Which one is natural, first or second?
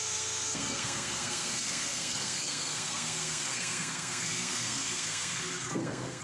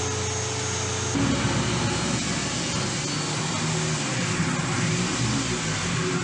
second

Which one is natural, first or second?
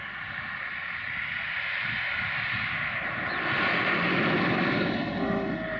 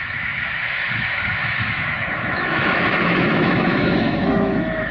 first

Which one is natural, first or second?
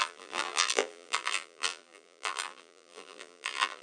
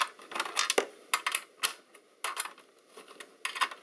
second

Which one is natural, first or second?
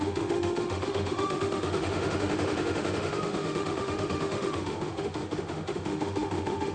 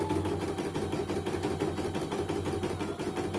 second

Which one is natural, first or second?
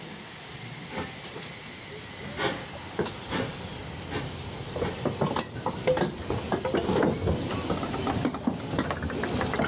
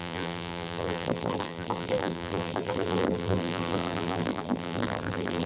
first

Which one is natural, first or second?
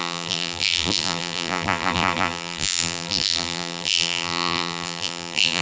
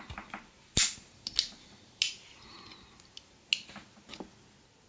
second